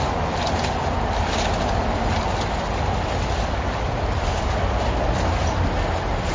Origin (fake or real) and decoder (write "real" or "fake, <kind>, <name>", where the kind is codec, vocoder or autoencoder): real